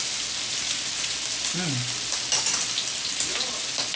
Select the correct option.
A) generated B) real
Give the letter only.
B